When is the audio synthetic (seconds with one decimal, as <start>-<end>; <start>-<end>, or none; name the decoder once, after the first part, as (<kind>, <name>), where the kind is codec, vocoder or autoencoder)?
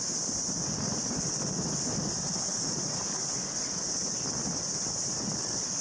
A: none